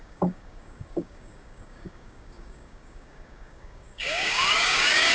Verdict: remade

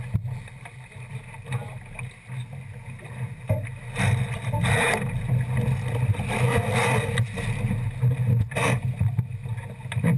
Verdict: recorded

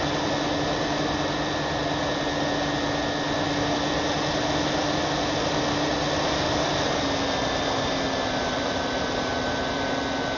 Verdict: recorded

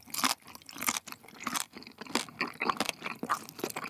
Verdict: recorded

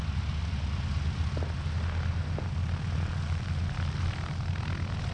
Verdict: recorded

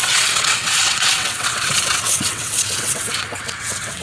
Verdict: remade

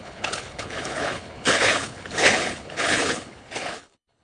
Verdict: remade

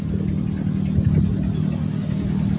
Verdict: recorded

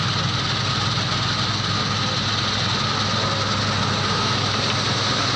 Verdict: recorded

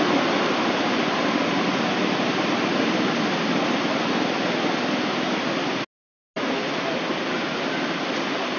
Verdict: recorded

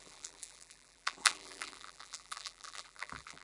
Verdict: remade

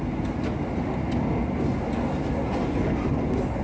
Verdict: recorded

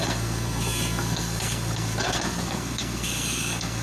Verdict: remade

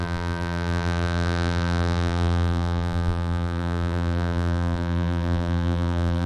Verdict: remade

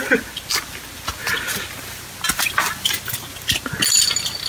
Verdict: recorded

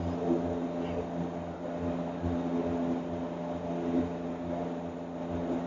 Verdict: recorded